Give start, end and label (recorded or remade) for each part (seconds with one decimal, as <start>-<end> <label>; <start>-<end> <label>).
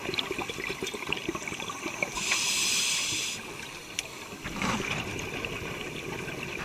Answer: 0.0-2.2 recorded; 2.2-6.6 remade